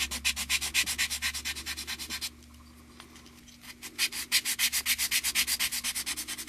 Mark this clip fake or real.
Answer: real